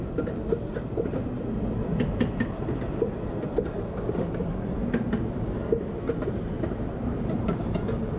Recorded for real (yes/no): yes